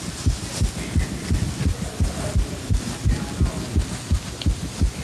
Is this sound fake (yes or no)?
no